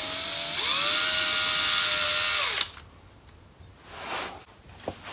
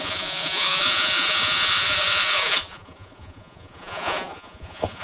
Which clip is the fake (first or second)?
second